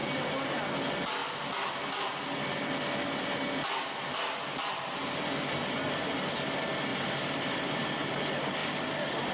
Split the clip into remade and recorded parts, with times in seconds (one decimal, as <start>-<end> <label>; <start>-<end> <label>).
0.0-6.9 recorded; 6.9-8.1 remade; 8.1-8.6 recorded; 8.6-9.3 remade